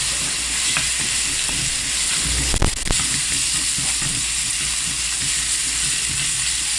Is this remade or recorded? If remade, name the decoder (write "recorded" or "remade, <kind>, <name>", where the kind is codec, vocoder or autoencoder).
recorded